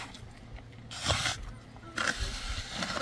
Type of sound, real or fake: real